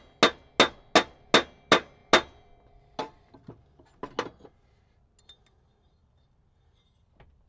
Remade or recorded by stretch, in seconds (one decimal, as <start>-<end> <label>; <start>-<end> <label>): 0.0-7.5 recorded